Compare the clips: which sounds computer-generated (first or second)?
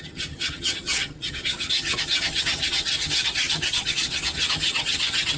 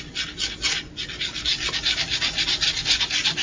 first